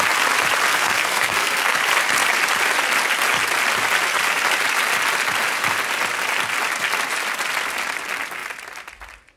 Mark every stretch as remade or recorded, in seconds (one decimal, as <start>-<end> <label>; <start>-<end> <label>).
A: 0.0-0.7 recorded; 0.7-1.8 remade; 1.8-9.4 recorded